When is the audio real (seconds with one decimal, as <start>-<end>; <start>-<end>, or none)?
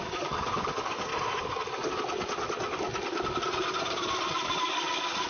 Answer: 1.1-4.3